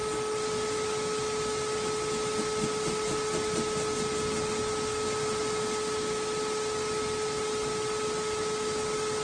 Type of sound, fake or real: real